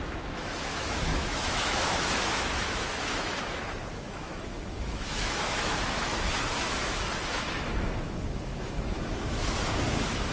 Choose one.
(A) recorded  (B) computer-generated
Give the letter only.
B